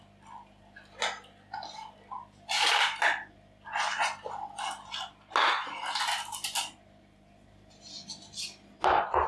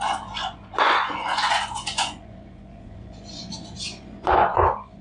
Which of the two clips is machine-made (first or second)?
second